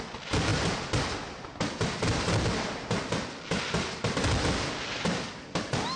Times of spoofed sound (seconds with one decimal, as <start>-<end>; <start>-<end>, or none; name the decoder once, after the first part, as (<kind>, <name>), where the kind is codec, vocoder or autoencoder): 0.5-1.0 (vocoder, BigVGAN v2)